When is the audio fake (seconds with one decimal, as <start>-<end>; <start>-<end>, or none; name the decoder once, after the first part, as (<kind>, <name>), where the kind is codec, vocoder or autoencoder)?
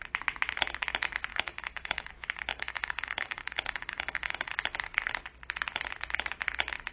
1.3-2.1 (codec, DAC); 2.5-4.5